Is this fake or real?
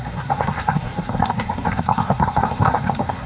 fake